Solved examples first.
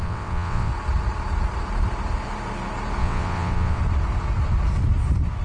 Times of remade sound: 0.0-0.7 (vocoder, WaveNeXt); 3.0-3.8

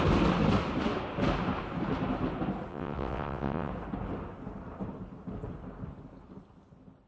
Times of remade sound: 2.7-3.7 (vocoder, WaveNeXt)